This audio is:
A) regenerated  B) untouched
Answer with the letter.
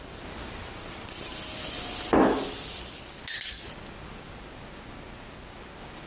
B